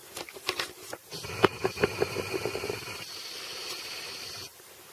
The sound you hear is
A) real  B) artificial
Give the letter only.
B